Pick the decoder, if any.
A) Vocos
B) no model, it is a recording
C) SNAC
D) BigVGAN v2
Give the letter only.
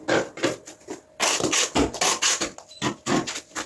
B